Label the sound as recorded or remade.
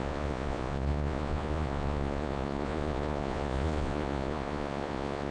remade